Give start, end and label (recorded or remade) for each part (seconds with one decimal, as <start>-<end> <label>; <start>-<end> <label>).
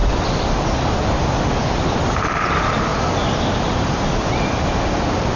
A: 0.0-5.4 recorded